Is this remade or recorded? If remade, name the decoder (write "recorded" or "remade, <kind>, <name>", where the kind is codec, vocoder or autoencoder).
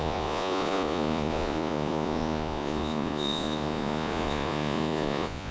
remade, vocoder, Vocos